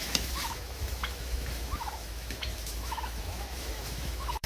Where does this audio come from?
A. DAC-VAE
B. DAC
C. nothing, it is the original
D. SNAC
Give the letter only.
A